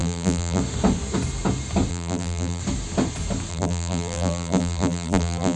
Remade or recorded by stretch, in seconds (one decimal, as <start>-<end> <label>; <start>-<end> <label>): 0.0-0.6 remade; 0.6-1.9 recorded; 1.9-2.6 remade; 2.6-3.5 recorded; 3.5-5.6 remade